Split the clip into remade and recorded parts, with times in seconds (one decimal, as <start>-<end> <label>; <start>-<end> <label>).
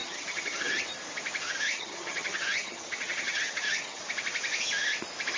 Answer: 0.0-0.8 remade; 0.8-1.7 recorded; 1.7-4.0 remade; 4.0-5.4 recorded